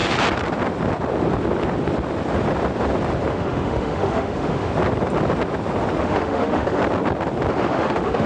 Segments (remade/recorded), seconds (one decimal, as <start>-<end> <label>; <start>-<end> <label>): 0.0-3.3 recorded; 3.3-4.7 remade; 4.7-6.0 recorded; 6.0-6.8 remade; 6.8-7.5 recorded; 7.5-8.3 remade